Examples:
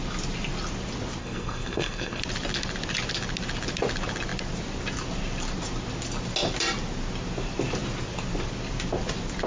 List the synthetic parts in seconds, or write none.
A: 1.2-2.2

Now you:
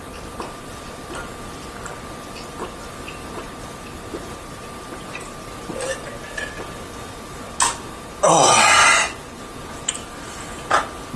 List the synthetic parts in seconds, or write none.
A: 8.8-9.4

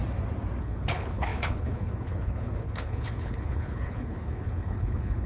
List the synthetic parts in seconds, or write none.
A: 0.6-5.3

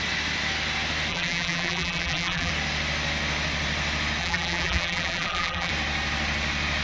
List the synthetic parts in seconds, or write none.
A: 1.1-2.5; 4.2-5.7

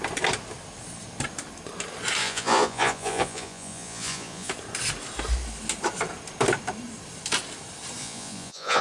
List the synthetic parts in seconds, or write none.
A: 2.2-4.5; 8.0-8.8

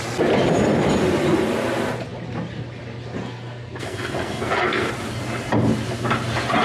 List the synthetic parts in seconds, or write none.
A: 3.2-4.9

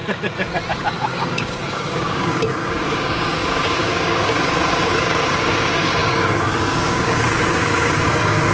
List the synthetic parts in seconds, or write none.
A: 1.0-8.5